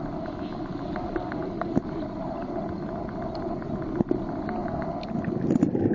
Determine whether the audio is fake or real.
real